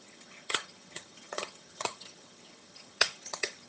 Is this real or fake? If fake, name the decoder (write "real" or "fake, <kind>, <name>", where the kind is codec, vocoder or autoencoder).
fake, vocoder, HiFi-GAN